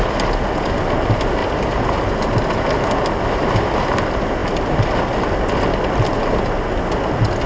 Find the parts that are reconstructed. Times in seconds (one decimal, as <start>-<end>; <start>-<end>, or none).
none

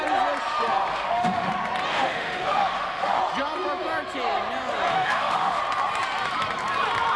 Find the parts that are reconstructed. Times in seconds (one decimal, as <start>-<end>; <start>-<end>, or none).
0.9-1.5; 1.9-3.2; 4.9-5.6

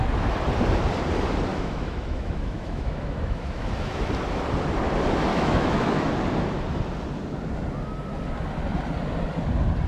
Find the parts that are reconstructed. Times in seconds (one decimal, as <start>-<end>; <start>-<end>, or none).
1.5-4.1; 5.3-6.1

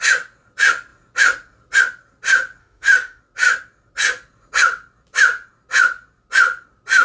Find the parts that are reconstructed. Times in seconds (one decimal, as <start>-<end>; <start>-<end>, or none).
2.6-3.2